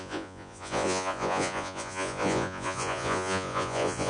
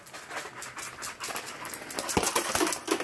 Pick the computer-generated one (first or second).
first